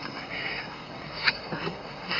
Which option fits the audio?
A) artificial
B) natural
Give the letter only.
A